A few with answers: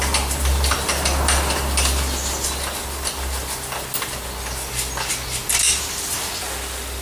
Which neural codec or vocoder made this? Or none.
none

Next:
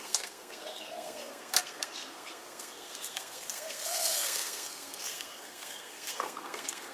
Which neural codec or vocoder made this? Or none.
codec, SNAC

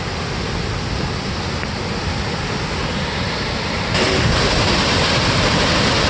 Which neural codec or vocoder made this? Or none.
none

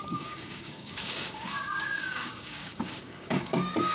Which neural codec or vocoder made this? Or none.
codec, DAC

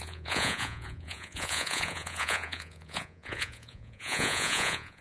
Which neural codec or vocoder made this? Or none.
vocoder, Vocos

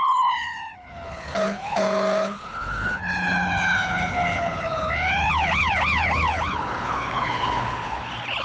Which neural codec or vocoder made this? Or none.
codec, HILCodec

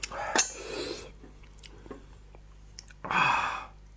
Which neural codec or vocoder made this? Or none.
none